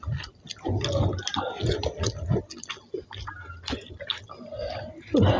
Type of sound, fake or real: real